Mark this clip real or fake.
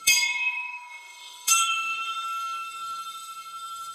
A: fake